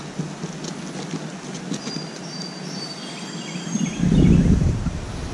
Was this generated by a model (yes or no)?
no